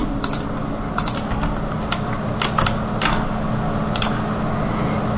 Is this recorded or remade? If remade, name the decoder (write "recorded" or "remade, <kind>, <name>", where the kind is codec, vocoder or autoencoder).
recorded